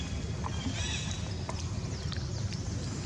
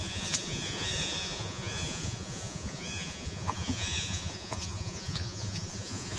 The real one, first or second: first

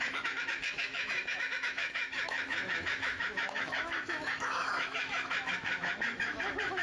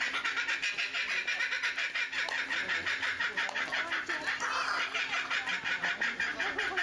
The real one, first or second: second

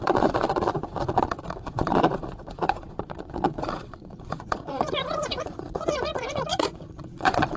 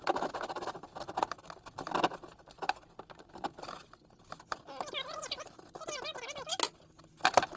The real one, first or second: second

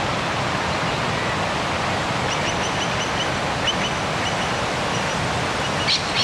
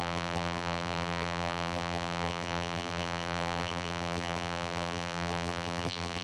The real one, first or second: first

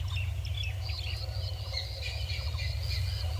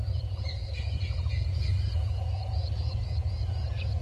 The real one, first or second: first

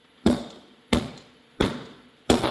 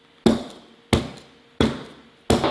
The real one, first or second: second